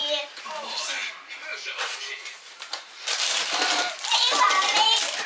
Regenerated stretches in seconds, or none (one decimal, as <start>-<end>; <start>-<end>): 0.0-5.3